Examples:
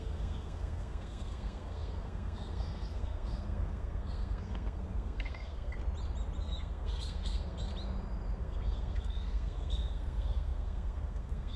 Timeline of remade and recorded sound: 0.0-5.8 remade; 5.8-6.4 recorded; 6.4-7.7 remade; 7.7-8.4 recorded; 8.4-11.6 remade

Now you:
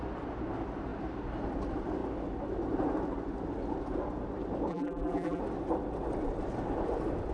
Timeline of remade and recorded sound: 0.0-4.7 recorded; 4.7-5.4 remade; 5.4-7.3 recorded

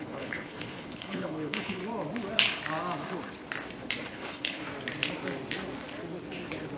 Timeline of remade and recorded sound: 0.0-1.8 remade; 1.8-4.1 recorded; 4.1-4.6 remade; 4.6-6.8 recorded

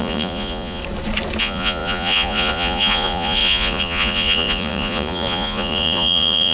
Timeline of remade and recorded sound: 0.0-0.8 remade; 0.8-1.4 recorded; 1.4-6.5 remade